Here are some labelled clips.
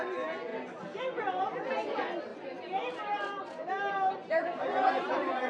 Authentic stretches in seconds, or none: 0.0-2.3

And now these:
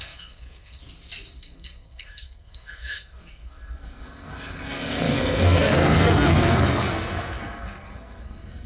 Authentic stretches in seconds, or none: 0.8-1.4

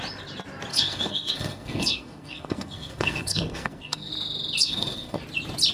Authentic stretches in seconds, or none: 0.0-0.7; 4.1-4.6; 5.2-5.7

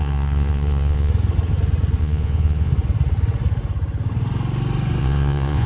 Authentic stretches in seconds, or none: 1.1-2.0; 2.7-5.0

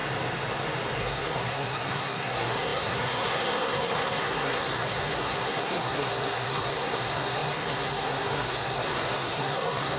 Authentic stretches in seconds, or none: 0.0-1.0

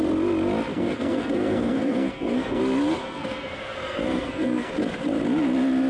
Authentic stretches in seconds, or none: 0.0-0.7; 2.6-3.0; 4.7-5.9

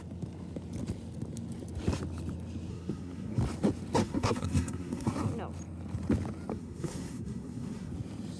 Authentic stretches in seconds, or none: 0.0-2.7; 3.4-4.0; 5.1-6.5; 7.9-8.4